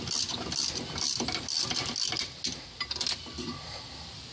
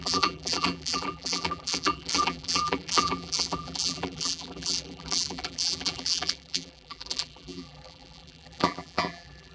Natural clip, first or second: first